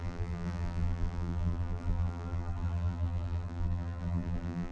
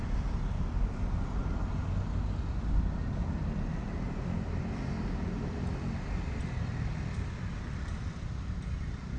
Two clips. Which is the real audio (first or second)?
second